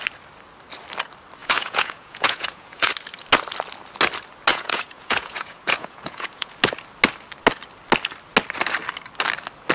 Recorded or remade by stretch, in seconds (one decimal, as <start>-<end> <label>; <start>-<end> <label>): 0.0-1.4 recorded; 1.4-2.9 remade; 2.9-4.5 recorded; 4.5-6.5 remade; 6.5-9.7 recorded